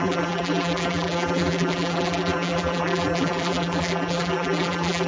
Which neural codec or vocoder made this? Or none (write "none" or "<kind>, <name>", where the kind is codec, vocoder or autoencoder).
vocoder, BigVGAN v2